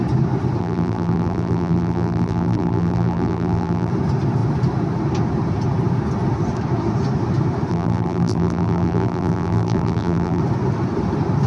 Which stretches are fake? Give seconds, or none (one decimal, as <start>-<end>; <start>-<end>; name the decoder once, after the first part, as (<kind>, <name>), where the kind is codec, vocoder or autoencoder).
0.6-3.9 (vocoder, BigVGAN v2); 7.7-10.4